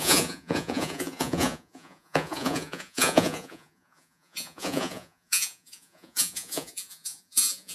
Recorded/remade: remade